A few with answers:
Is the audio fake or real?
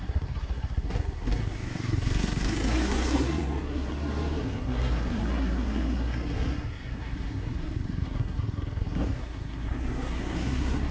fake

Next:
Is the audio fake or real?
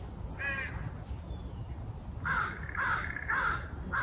real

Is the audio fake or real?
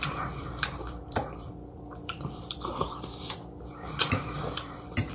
fake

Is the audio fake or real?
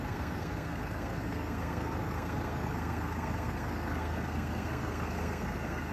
fake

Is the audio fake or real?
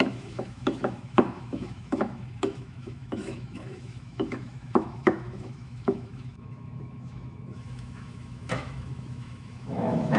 fake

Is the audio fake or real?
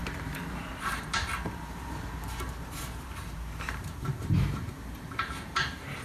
fake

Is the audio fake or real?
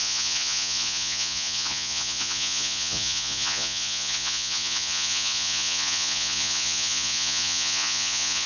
fake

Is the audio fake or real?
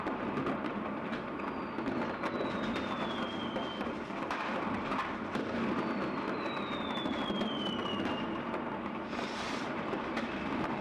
real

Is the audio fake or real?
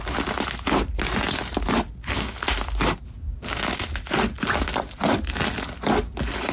real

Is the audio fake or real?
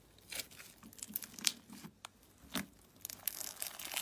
real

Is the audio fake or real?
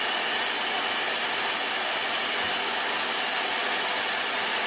real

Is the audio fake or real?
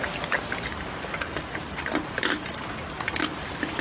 fake